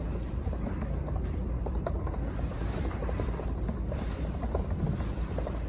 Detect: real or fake fake